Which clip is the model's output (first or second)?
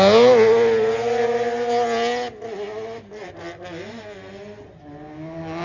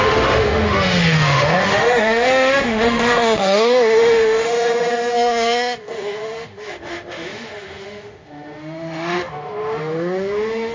second